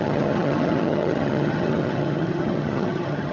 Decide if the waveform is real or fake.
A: fake